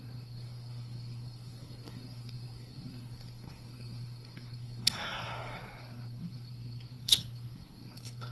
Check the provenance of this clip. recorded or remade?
remade